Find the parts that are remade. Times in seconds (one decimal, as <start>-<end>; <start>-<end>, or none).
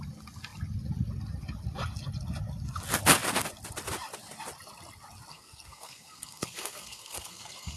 5.3-7.8